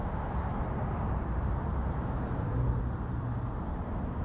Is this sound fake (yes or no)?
no